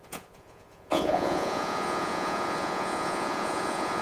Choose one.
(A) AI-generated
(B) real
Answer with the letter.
A